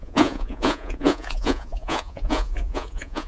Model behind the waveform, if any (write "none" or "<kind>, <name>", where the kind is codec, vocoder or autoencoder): vocoder, Vocos